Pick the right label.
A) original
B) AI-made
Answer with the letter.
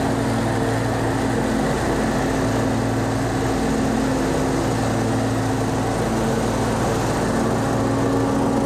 A